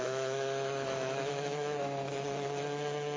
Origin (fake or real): fake